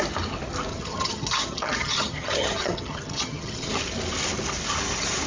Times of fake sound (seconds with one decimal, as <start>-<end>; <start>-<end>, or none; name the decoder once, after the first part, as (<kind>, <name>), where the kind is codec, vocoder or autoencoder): 0.7-3.7 (vocoder, HiFi-GAN)